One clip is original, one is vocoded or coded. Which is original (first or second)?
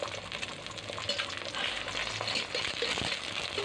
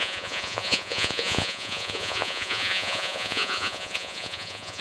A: first